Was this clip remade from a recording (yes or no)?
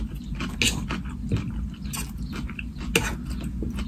no